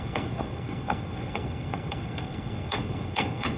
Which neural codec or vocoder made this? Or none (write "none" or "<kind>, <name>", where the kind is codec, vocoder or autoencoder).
codec, SNAC